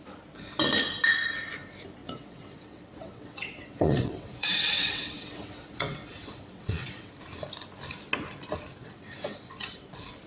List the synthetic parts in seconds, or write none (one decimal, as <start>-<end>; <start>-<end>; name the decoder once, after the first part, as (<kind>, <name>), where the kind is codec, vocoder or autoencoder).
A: 2.0-7.1 (vocoder, WaveNeXt); 8.8-9.9